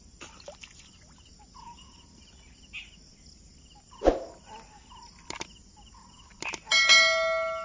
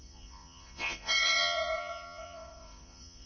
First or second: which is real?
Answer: first